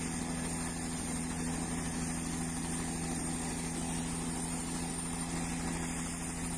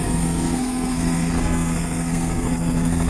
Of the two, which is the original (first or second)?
first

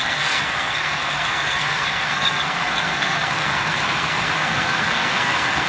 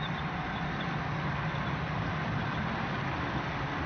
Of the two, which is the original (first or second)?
second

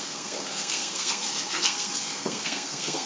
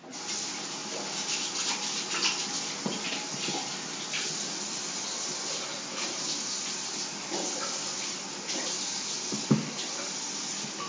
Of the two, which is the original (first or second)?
second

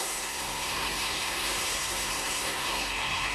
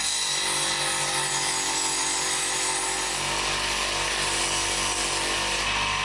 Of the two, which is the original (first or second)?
second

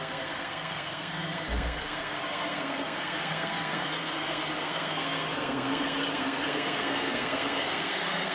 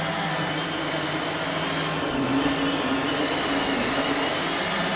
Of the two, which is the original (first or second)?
second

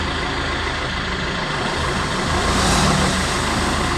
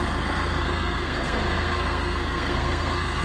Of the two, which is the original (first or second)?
first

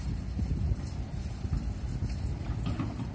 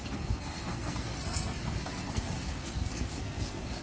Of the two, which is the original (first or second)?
first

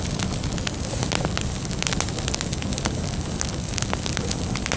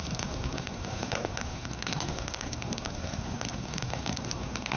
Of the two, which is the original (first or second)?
first